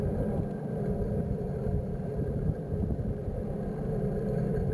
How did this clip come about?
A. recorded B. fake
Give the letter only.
A